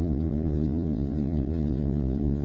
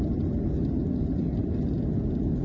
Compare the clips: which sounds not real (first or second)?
first